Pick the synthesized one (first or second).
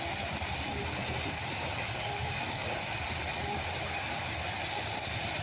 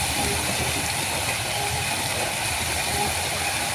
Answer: second